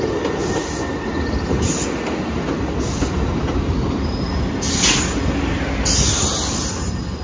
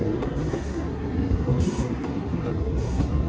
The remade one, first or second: second